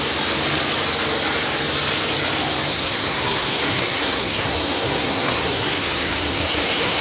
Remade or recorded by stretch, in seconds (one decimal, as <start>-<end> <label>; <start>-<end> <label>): 0.0-2.7 recorded; 2.7-7.0 remade